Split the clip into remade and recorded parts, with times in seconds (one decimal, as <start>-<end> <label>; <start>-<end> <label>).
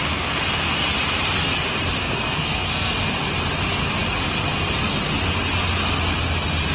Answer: 0.0-2.0 recorded; 2.0-2.9 remade; 2.9-6.7 recorded